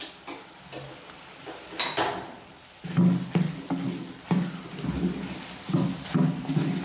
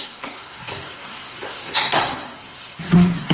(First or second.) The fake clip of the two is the second